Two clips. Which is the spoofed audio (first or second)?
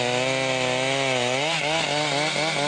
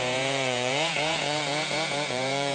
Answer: second